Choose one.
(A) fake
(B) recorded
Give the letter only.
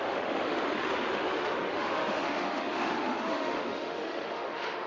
A